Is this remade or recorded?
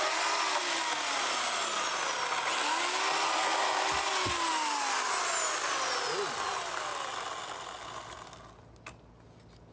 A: recorded